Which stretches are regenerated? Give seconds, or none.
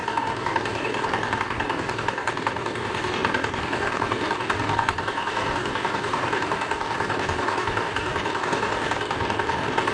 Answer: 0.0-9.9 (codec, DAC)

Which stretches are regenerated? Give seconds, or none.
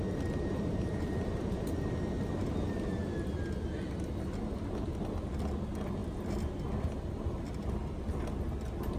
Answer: none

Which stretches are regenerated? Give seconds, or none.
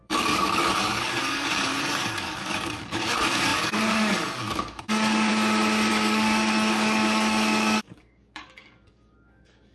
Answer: 0.0-5.3 (codec, DAC); 5.9-9.7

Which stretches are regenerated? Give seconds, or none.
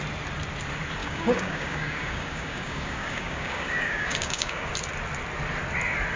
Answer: 1.0-4.7 (codec, DAC)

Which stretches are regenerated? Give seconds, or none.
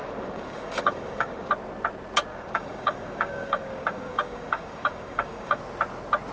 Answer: 0.0-1.5 (codec, DAC); 2.3-5.6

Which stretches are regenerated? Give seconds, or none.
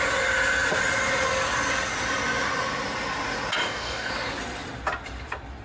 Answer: 3.6-4.1 (codec, DAC)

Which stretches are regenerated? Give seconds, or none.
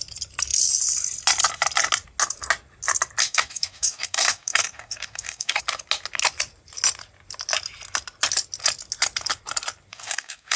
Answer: 3.2-5.6 (codec, DAC); 9.9-10.6